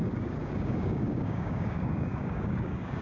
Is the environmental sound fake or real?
fake